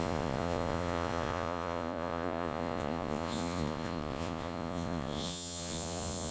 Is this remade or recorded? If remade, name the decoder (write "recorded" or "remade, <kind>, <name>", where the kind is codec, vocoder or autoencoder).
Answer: remade, vocoder, Vocos